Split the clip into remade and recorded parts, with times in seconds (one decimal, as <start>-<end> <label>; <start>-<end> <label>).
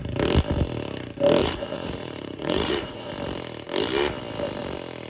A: 0.0-1.4 recorded; 1.4-3.1 remade; 3.1-5.1 recorded